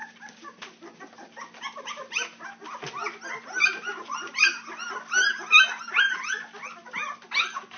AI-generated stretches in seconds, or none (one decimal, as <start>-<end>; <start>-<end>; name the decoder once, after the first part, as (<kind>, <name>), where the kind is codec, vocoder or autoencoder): none